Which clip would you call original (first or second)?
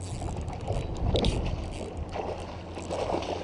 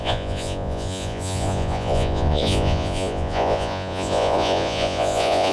first